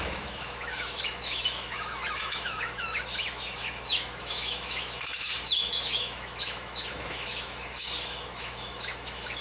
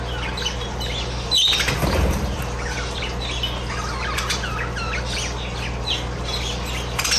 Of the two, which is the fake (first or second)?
first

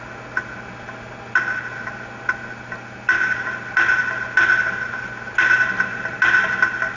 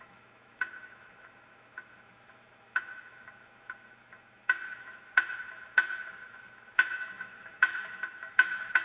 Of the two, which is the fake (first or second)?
second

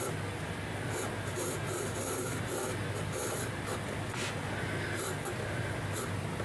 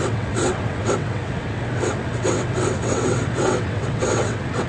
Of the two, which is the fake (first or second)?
second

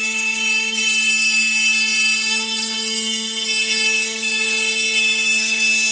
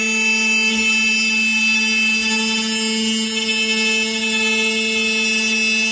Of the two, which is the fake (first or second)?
first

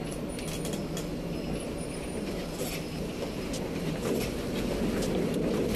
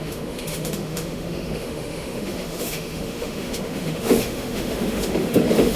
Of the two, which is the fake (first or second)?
second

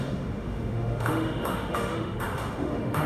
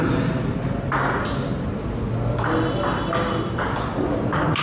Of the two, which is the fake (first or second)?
first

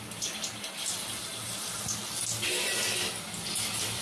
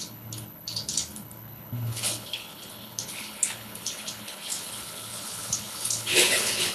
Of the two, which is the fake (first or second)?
second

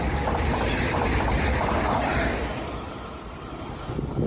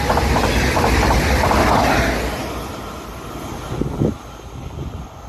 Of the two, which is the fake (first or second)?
first